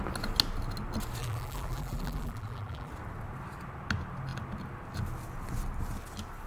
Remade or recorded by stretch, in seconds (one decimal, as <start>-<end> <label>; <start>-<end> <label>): 0.0-1.2 recorded; 1.2-2.9 remade; 2.9-6.5 recorded